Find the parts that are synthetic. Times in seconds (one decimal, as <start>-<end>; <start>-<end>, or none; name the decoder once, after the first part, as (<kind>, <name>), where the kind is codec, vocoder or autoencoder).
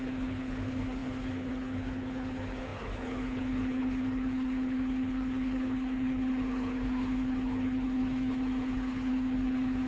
0.0-9.9 (codec, HILCodec)